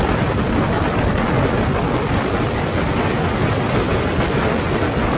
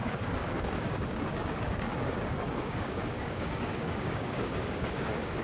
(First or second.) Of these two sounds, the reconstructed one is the second